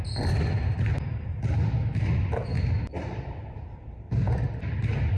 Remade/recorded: recorded